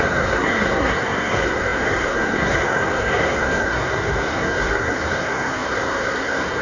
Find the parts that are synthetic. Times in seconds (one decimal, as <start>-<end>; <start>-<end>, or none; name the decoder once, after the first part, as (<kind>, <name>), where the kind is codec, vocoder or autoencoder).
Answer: 0.0-6.6 (codec, SNAC)